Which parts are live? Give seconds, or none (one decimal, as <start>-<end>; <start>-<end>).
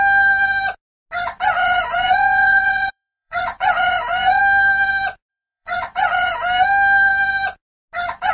0.0-1.6; 4.4-5.3; 6.3-8.3